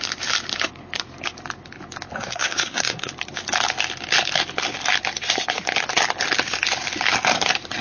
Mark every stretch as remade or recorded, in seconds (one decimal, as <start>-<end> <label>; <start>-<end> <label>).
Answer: 0.0-2.1 recorded; 2.1-3.1 remade; 3.1-7.8 recorded